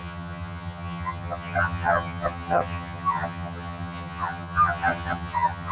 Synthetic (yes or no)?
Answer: yes